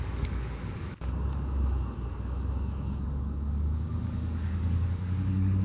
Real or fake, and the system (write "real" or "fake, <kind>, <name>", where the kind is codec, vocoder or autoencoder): fake, codec, DAC